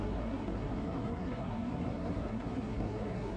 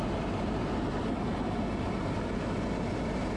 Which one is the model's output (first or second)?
first